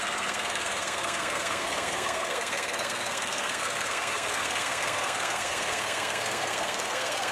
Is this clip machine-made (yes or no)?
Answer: yes